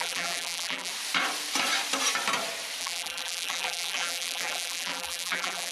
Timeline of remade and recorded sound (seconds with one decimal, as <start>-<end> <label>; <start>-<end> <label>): 0.0-0.9 remade; 0.9-2.8 recorded; 2.8-5.7 remade